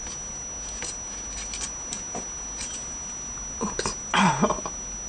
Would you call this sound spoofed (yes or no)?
no